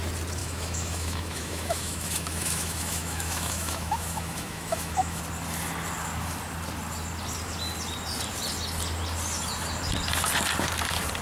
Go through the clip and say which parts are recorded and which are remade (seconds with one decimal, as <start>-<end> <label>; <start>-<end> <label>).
0.0-0.4 recorded; 0.4-5.2 remade; 5.2-11.2 recorded